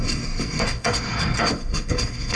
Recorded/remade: remade